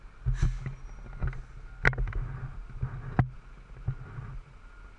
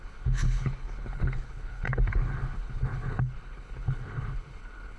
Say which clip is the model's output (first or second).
second